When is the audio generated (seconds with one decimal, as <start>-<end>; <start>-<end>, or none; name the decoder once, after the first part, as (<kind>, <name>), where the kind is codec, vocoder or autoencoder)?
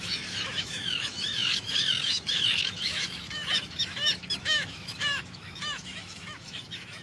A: 0.0-7.0 (autoencoder, DAC-VAE)